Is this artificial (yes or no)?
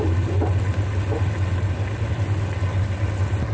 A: no